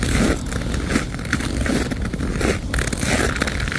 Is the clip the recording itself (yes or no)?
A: yes